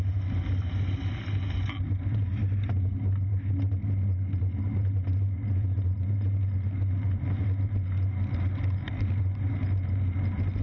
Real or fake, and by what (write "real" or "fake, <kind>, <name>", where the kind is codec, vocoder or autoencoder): real